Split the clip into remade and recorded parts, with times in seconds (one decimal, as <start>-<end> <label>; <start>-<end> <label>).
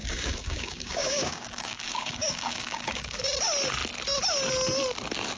0.0-3.2 remade; 3.2-5.4 recorded